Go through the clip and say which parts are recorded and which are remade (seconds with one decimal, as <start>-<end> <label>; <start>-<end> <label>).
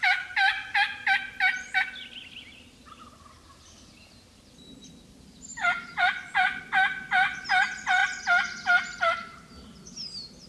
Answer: 0.0-5.5 recorded; 5.5-6.6 remade; 6.6-10.5 recorded